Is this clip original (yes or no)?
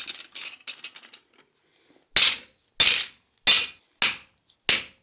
yes